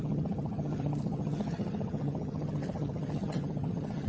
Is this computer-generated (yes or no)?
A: yes